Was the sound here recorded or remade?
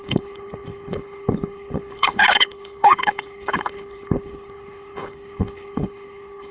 remade